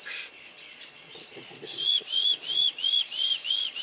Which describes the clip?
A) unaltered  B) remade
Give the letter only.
B